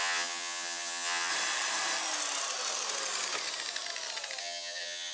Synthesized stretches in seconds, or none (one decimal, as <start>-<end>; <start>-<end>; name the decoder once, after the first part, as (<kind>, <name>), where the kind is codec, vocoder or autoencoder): 0.0-1.3 (vocoder, HiFi-GAN); 4.4-5.1